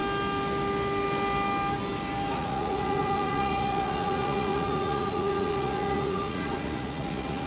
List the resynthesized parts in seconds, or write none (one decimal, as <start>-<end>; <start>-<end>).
2.3-7.5